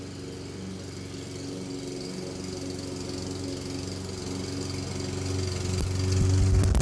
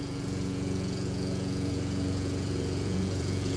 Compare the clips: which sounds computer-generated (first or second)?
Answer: second